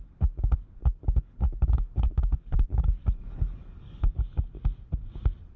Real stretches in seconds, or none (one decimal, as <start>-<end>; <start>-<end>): 0.0-0.8; 4.2-5.6